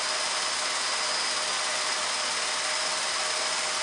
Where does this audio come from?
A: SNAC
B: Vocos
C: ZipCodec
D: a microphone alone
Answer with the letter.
D